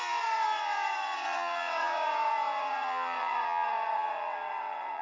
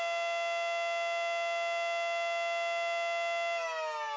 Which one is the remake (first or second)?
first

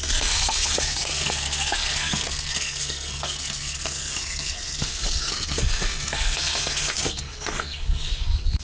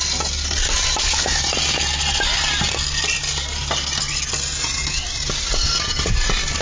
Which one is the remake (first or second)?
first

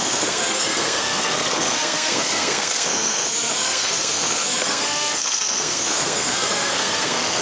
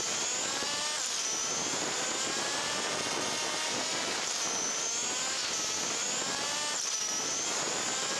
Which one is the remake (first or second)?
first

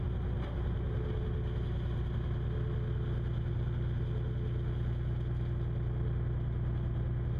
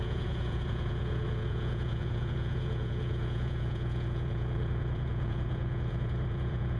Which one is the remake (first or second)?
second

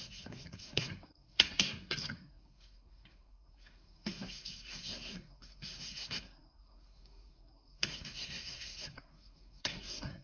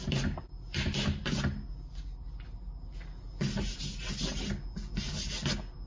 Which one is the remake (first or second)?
first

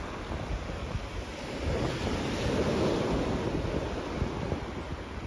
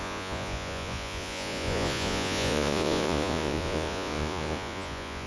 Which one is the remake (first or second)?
second